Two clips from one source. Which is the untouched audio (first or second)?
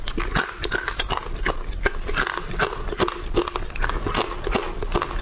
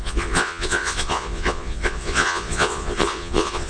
first